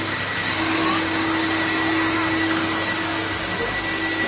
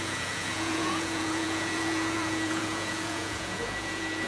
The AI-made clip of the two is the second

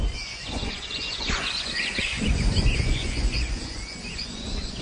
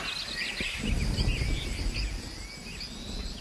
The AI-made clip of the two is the first